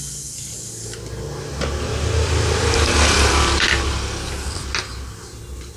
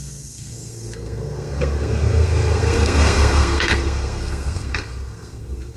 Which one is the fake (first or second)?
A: second